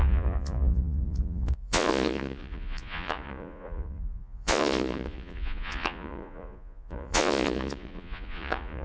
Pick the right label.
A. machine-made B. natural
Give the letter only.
A